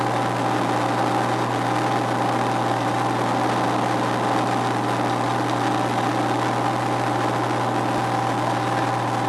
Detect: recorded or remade recorded